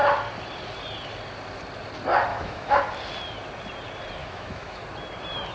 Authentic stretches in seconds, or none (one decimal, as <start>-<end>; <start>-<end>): 0.0-2.3; 2.8-4.2; 4.8-5.5